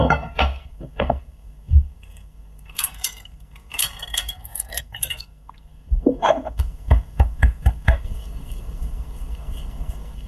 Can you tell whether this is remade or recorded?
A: remade